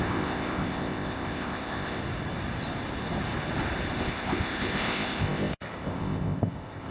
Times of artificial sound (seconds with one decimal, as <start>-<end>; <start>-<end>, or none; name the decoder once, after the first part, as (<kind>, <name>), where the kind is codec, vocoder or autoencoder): 0.0-2.0 (codec, ZipCodec); 4.0-6.9